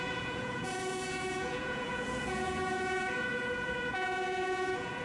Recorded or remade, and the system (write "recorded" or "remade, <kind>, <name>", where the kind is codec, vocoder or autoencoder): remade, vocoder, Vocos